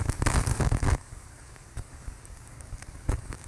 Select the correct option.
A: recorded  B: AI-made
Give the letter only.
B